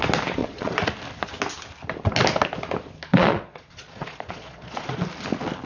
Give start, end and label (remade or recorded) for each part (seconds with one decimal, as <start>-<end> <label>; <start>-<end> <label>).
0.0-0.4 recorded; 0.4-0.9 remade; 0.9-3.1 recorded; 3.1-5.0 remade; 5.0-5.7 recorded